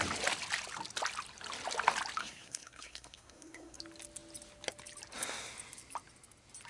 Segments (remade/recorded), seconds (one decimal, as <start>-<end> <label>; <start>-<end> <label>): 0.0-2.2 recorded; 2.2-3.8 remade; 3.8-6.7 recorded